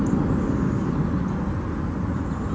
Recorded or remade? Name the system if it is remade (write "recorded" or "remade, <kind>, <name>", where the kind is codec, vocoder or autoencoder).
recorded